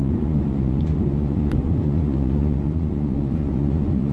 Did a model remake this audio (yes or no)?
yes